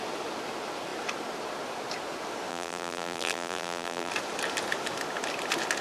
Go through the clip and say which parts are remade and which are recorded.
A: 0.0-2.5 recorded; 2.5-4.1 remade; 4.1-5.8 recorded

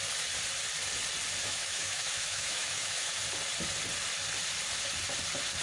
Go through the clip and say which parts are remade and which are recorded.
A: 0.0-1.4 recorded; 1.4-3.2 remade; 3.2-5.6 recorded

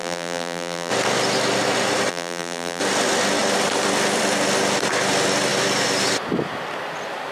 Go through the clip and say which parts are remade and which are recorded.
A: 0.0-0.9 remade; 0.9-2.1 recorded; 2.1-2.8 remade; 2.8-7.3 recorded

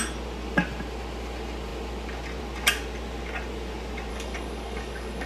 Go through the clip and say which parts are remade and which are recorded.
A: 0.0-4.1 recorded; 4.1-5.3 remade

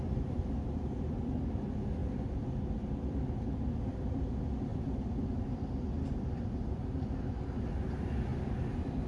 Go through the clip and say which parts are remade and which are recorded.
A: 0.0-2.0 recorded; 2.0-3.7 remade; 3.7-4.7 recorded; 4.7-7.3 remade; 7.3-9.1 recorded